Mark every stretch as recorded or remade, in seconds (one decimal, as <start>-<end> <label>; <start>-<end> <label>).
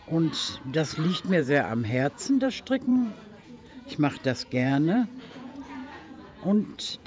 0.0-7.1 remade